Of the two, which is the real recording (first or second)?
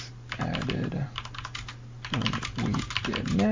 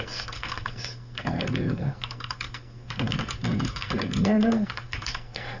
first